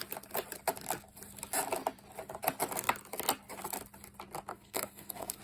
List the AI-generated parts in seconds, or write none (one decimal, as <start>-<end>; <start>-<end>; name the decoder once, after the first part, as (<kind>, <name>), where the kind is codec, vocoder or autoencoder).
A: 4.5-5.4 (codec, SNAC)